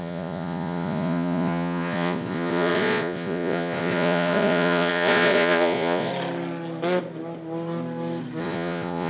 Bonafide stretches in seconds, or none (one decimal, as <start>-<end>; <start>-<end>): 6.1-8.4